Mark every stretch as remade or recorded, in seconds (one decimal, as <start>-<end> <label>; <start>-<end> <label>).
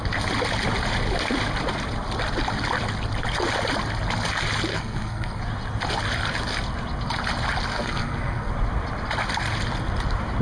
0.0-4.7 recorded; 4.7-5.4 remade; 5.4-7.7 recorded; 7.7-8.5 remade; 8.5-10.4 recorded